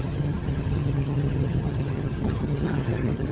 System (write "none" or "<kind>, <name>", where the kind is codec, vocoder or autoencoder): vocoder, HiFi-GAN